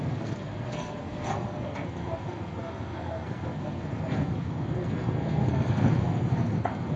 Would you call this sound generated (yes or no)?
yes